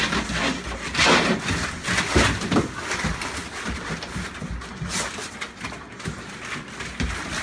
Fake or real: real